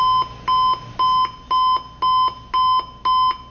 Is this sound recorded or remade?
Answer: recorded